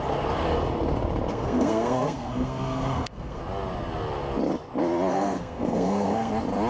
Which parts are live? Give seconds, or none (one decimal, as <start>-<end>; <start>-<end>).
0.0-1.3; 3.4-5.1; 6.3-6.7